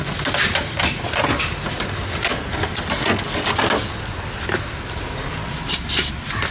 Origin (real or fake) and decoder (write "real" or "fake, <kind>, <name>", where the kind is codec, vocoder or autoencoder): real